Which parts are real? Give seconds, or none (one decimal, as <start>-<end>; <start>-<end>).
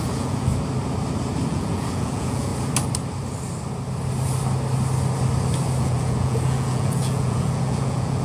0.5-1.5; 2.5-5.8